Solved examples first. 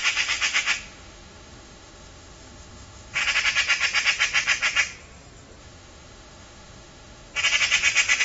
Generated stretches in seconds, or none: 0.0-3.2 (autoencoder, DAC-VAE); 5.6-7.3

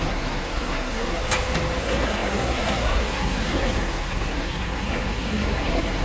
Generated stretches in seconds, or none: 0.0-1.2 (codec, SNAC); 1.8-6.0

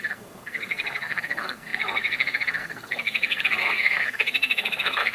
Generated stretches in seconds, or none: 0.0-5.1 (codec, SNAC)

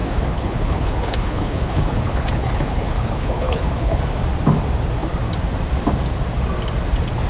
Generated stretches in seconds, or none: 0.0-4.0 (codec, HILCodec)

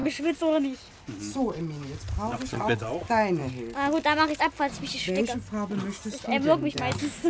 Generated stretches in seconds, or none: 2.3-2.9 (vocoder, WaveNeXt)

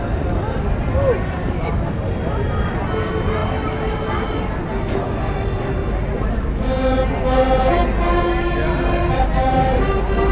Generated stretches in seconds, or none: none

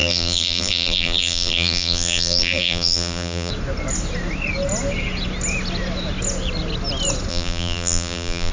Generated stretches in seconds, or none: 0.0-3.5 (vocoder, BigVGAN v2); 7.3-8.5